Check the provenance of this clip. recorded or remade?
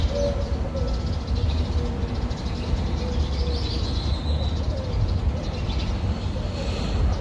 recorded